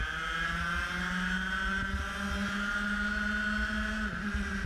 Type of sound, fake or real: real